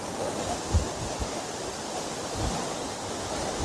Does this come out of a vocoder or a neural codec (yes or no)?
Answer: no